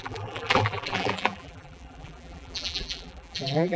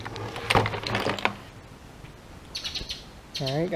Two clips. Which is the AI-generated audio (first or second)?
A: first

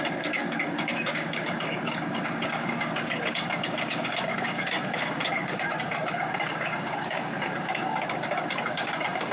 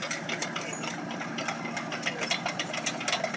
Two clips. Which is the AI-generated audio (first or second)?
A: first